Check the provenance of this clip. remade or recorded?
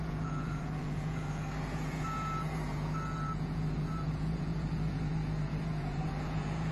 remade